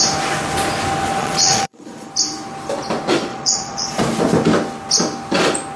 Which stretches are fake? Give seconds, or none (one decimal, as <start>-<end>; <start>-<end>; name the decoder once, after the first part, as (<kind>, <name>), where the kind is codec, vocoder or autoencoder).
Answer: 1.2-2.1 (vocoder, Vocos); 3.3-4.0